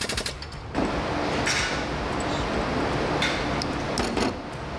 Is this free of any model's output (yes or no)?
yes